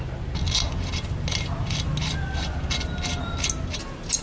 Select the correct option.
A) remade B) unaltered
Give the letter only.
B